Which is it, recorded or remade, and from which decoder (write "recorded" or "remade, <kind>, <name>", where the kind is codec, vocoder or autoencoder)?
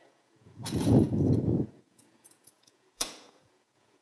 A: remade, vocoder, Vocos